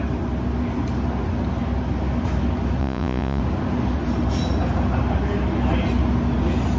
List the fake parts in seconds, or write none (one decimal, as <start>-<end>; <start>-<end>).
2.8-3.4